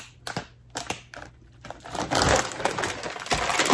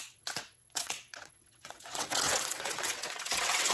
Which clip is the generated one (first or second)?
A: second